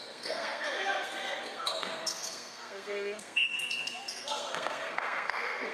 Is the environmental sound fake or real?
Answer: fake